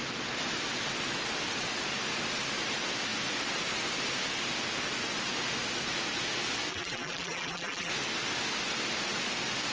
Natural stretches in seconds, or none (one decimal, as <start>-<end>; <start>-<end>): 0.0-6.7; 7.9-9.7